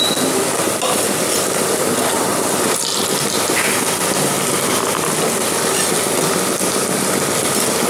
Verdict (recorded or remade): recorded